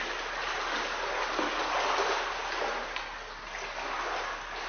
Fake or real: real